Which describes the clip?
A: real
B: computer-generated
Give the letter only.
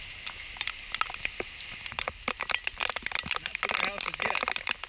A